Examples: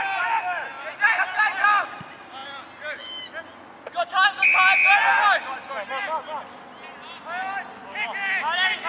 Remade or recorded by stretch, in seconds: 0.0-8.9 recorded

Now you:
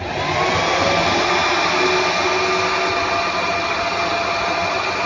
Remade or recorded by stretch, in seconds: 0.0-5.1 recorded

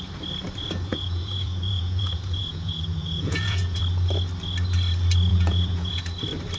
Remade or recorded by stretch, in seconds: 0.0-0.9 recorded; 0.9-3.8 remade; 3.8-5.3 recorded; 5.3-6.0 remade; 6.0-6.6 recorded

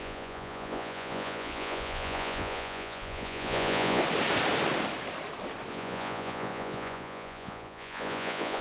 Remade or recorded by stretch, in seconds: 0.0-4.0 remade; 4.0-5.7 recorded; 5.7-8.6 remade

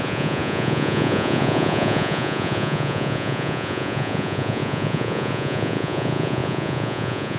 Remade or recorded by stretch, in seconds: 0.0-7.4 remade

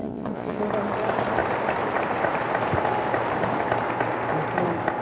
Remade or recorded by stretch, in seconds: 0.0-0.6 remade; 0.6-5.0 recorded

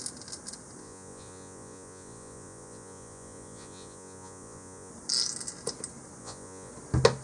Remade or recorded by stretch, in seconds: 0.0-0.8 recorded; 0.8-4.9 remade; 4.9-6.2 recorded; 6.2-6.7 remade; 6.7-7.2 recorded

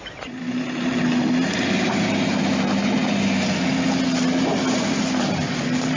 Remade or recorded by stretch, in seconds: 0.0-6.0 recorded